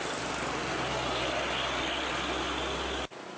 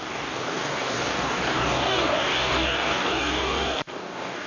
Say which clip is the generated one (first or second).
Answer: second